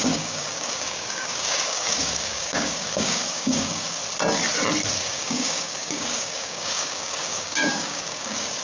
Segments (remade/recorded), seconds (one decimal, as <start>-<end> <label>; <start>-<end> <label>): 0.0-4.0 remade; 4.0-5.0 recorded; 5.0-8.6 remade